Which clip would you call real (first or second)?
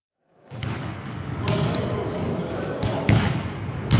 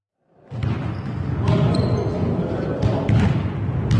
second